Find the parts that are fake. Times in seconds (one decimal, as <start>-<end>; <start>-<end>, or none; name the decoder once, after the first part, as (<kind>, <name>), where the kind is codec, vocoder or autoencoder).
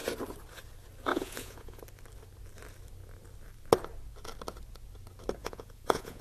1.1-1.8 (vocoder, Vocos); 5.4-6.2